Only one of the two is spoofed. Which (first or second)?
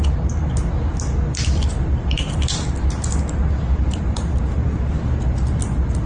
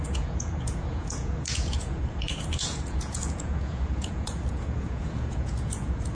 second